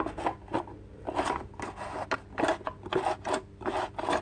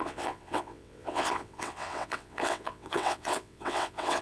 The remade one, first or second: second